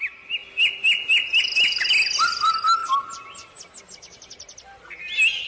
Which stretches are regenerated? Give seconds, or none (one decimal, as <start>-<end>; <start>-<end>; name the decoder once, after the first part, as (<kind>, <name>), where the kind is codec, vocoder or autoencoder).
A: none